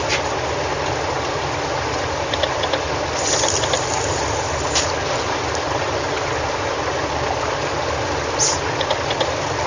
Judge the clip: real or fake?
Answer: real